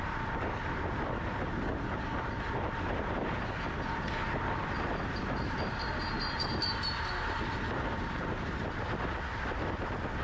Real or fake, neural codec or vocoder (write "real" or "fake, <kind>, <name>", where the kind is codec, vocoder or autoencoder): real